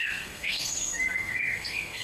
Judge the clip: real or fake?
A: fake